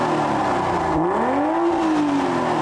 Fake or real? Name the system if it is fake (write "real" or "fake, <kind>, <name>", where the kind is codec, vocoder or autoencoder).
real